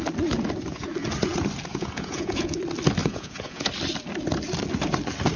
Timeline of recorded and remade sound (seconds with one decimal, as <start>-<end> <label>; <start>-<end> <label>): 0.0-1.7 recorded; 1.7-2.6 remade; 2.6-3.0 recorded; 3.0-3.7 remade; 3.7-5.4 recorded